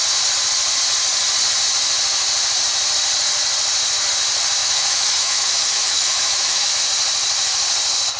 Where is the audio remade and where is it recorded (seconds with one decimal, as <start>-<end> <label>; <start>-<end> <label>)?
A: 0.0-4.6 recorded; 4.6-6.7 remade; 6.7-8.2 recorded